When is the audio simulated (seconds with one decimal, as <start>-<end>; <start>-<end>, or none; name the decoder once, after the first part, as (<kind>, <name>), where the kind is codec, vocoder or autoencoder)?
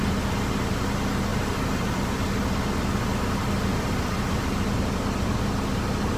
1.3-2.3 (vocoder, BigVGAN v2); 3.7-5.4